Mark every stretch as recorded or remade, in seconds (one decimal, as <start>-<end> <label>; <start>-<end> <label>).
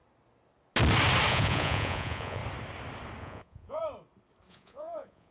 0.0-1.3 recorded; 1.3-2.4 remade; 2.4-3.2 recorded; 3.2-3.8 remade; 3.8-4.5 recorded; 4.5-5.3 remade